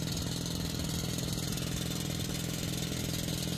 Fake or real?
real